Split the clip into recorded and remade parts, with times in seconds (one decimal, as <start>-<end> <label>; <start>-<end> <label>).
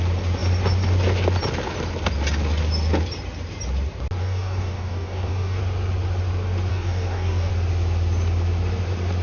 0.0-4.2 recorded; 4.2-5.6 remade; 5.6-6.7 recorded; 6.7-7.5 remade; 7.5-9.2 recorded